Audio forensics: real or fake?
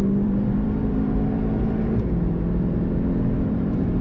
fake